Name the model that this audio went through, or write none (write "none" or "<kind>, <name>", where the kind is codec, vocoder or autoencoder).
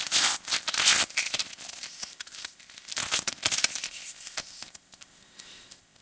codec, ZipCodec